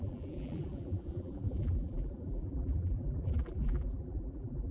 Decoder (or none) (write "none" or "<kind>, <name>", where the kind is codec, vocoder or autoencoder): vocoder, BigVGAN v2